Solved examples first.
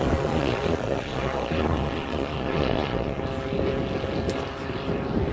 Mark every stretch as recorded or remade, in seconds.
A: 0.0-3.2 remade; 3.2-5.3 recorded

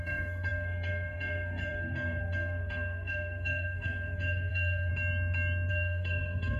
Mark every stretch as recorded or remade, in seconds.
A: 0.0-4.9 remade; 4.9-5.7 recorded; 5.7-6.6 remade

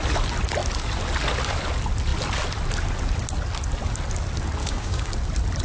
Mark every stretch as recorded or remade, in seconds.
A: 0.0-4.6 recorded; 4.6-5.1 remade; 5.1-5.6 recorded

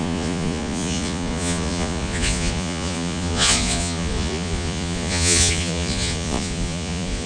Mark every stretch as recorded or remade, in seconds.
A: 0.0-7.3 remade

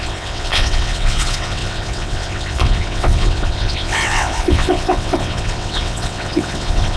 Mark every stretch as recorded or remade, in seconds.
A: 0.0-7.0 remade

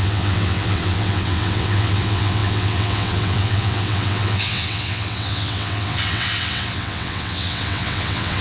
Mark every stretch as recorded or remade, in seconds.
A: 0.0-8.4 remade